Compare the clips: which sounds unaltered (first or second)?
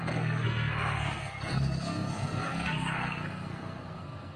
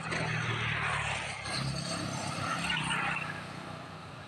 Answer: second